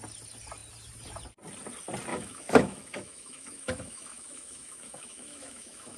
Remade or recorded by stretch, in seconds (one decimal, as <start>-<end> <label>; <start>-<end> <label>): 0.0-2.1 recorded; 2.1-6.0 remade